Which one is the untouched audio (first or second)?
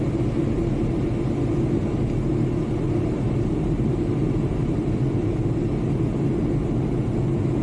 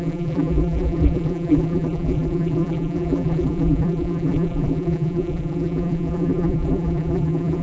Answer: first